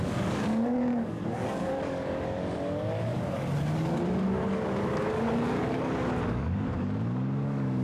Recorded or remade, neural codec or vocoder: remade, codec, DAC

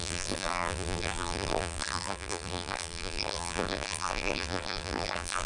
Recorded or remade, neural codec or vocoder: remade, vocoder, BigVGAN v2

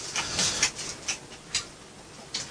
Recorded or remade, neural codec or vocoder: recorded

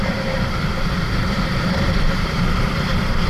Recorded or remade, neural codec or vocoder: remade, vocoder, BigVGAN v2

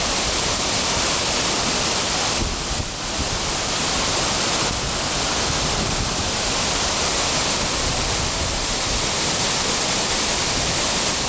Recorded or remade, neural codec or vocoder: remade, vocoder, BigVGAN v2